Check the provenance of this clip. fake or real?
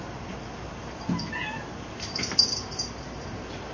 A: fake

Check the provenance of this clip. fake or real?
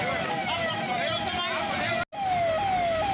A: real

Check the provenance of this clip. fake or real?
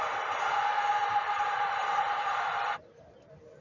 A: fake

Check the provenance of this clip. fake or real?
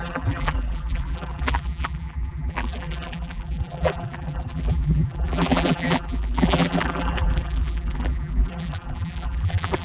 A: fake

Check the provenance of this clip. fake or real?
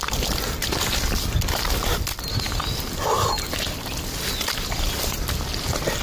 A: fake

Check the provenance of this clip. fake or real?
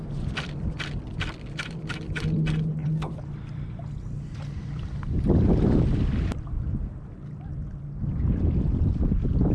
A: fake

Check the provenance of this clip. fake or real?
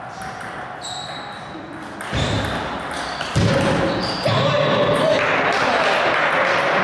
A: real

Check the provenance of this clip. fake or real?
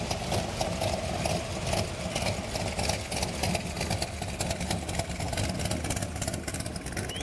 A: real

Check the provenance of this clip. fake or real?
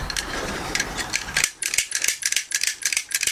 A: real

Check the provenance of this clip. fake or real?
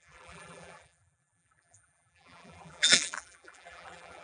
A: fake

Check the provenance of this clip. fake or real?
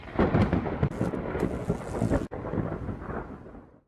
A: real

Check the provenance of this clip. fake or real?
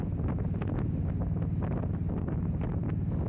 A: real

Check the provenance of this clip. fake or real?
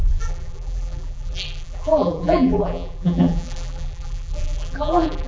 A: fake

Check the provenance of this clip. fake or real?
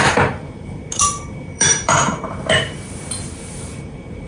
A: fake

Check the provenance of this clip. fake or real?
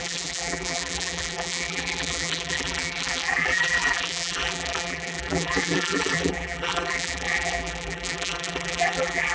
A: fake